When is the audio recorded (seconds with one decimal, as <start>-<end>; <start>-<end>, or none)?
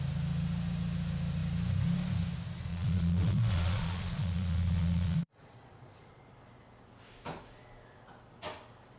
0.0-2.7; 6.2-9.0